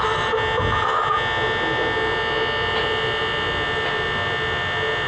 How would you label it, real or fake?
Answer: real